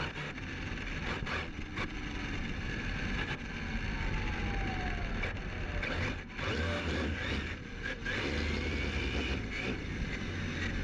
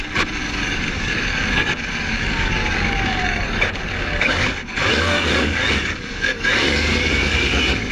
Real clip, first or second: first